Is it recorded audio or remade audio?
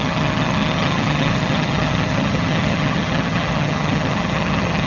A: remade